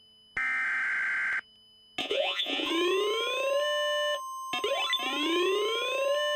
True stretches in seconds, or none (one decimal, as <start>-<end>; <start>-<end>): 0.0-2.0; 2.7-6.4